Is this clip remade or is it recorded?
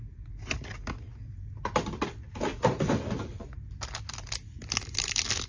recorded